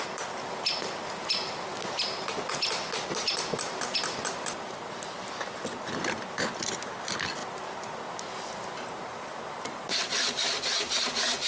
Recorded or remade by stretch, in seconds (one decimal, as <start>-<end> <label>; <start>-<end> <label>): 0.0-11.5 recorded